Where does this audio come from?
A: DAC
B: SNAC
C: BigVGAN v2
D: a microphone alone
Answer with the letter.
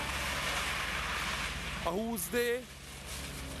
D